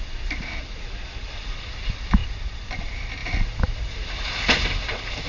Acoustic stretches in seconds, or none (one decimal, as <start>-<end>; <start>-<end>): 0.0-5.3